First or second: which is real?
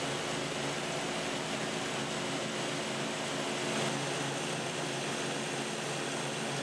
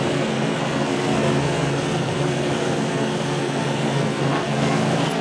first